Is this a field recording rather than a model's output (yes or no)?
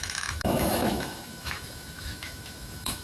no